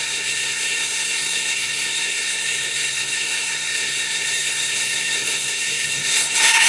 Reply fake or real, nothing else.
fake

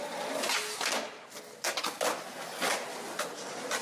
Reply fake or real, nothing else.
real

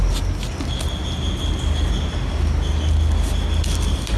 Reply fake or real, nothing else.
real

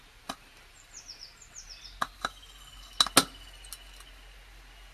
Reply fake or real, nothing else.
real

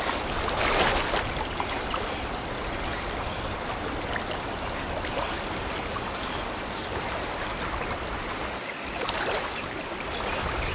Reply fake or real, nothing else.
real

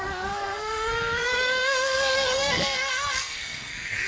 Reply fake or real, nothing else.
fake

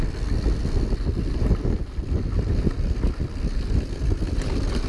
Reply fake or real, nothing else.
real